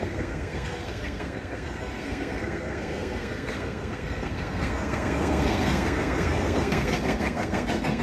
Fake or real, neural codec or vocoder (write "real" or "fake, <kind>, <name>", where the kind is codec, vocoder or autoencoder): fake, codec, SNAC